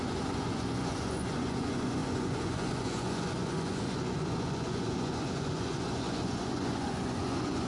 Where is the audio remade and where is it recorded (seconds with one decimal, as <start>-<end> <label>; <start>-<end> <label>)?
0.0-7.7 remade